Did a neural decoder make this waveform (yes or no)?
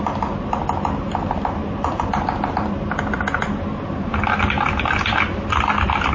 no